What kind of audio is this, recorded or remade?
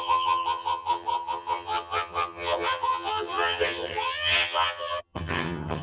remade